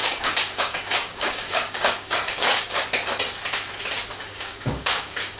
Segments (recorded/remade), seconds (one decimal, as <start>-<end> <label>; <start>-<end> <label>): 0.0-2.8 remade; 2.8-4.2 recorded; 4.2-5.4 remade